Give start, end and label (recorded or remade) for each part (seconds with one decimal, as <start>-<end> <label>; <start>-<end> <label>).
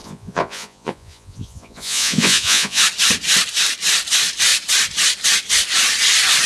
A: 0.0-2.8 remade; 2.8-6.5 recorded